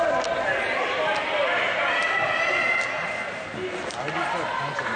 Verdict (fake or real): real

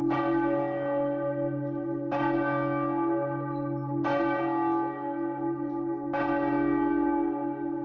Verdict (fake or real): real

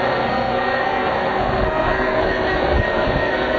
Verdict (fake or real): fake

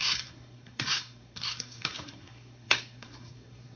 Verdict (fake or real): fake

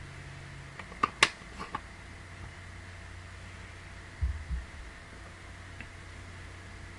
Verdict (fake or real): real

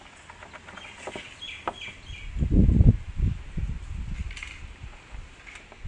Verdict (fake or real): real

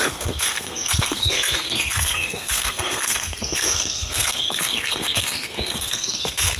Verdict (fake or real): fake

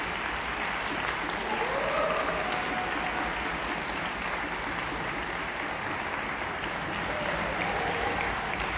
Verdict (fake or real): real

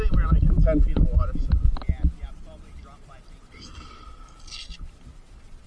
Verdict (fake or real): real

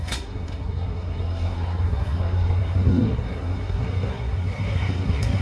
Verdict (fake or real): fake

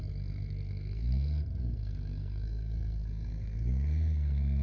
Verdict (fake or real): fake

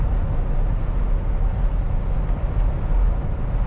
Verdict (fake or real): real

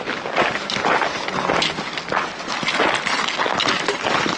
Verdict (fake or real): real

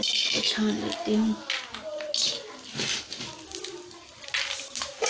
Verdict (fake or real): real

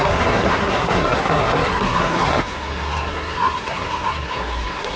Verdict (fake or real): fake